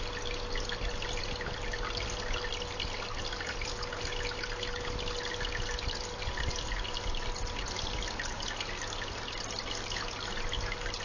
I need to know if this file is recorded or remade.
recorded